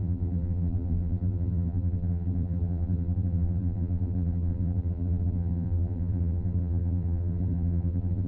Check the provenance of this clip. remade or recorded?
remade